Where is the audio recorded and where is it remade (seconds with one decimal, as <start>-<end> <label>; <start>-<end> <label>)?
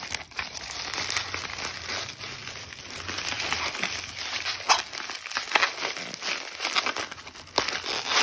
0.0-8.2 recorded